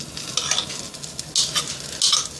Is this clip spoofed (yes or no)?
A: no